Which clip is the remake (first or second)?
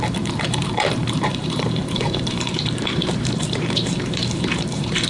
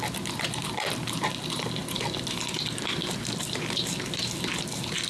first